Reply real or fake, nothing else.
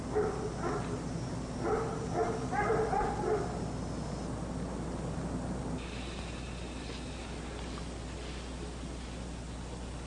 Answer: real